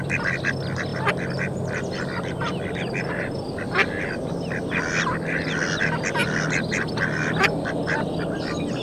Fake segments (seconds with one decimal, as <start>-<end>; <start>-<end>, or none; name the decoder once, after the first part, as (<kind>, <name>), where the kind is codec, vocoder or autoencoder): none